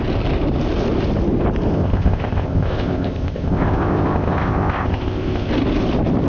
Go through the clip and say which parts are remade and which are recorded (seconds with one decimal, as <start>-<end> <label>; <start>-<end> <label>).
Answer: 0.0-1.7 recorded; 1.7-5.5 remade; 5.5-6.3 recorded